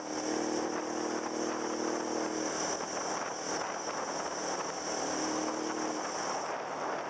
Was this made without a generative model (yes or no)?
yes